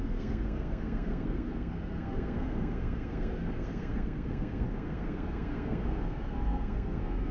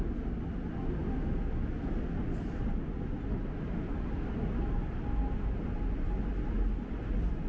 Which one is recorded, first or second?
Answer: second